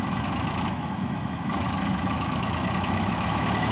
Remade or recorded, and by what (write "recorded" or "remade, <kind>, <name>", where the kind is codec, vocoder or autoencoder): remade, autoencoder, DAC-VAE